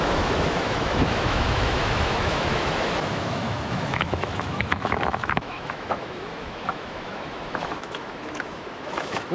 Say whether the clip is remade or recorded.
remade